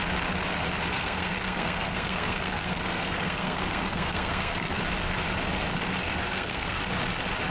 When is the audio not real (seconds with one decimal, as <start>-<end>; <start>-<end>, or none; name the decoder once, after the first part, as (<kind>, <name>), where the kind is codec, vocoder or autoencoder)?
0.9-4.8 (codec, SNAC); 6.0-6.8